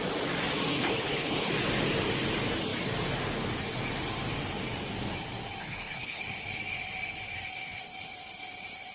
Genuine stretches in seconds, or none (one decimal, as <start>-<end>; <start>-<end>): 0.0-0.7; 1.5-5.6; 6.2-8.9